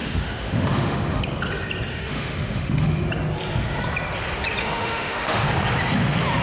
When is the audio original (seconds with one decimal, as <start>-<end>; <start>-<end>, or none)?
1.2-1.9; 3.1-4.6; 5.5-6.4